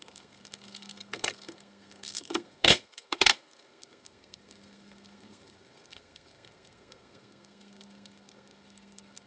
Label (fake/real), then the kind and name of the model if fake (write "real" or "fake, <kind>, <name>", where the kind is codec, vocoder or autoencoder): fake, codec, SNAC